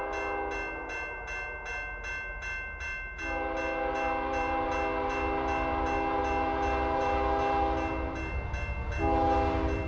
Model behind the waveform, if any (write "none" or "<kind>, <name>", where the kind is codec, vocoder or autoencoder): none